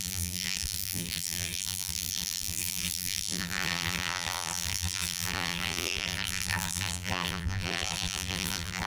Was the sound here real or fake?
fake